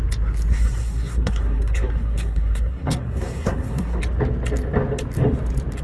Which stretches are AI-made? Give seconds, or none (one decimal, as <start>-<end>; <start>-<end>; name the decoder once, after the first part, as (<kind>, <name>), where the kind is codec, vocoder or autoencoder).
0.5-4.0 (codec, SNAC)